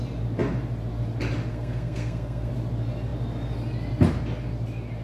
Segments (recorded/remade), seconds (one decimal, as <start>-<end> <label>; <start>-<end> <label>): 0.0-1.5 recorded; 1.5-2.5 remade; 2.5-5.0 recorded